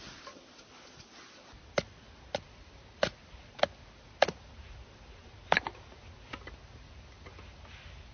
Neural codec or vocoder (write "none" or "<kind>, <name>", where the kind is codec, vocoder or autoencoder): none